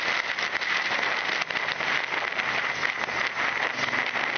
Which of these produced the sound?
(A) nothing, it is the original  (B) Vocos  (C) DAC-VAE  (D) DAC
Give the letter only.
A